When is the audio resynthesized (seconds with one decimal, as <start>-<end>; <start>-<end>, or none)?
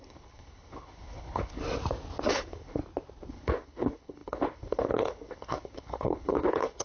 0.0-1.6; 2.3-2.8; 3.3-6.8